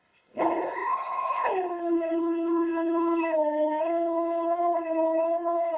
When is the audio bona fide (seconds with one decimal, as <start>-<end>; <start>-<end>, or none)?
none